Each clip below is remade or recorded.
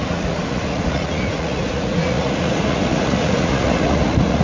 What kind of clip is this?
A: remade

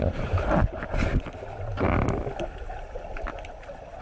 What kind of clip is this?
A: recorded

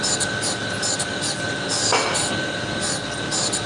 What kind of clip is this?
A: recorded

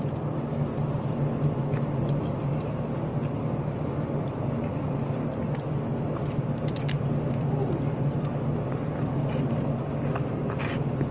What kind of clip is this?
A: recorded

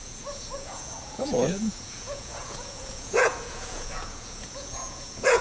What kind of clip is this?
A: remade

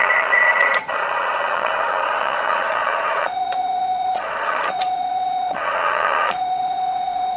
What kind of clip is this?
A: remade